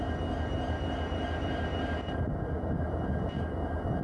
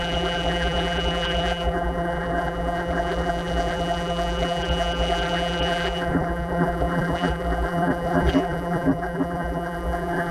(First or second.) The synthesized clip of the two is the second